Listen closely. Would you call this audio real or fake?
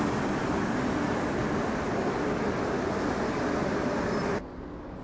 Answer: real